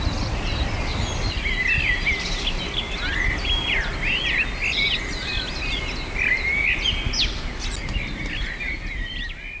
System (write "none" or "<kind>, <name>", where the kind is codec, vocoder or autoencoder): none